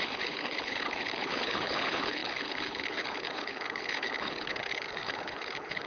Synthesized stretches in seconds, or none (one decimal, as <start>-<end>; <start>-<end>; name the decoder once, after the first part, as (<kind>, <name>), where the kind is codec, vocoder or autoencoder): 0.0-5.9 (codec, HILCodec)